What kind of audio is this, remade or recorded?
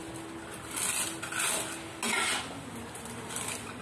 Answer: recorded